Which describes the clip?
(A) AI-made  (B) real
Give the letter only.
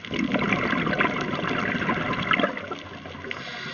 B